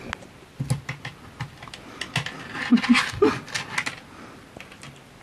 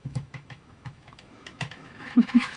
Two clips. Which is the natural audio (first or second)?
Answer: first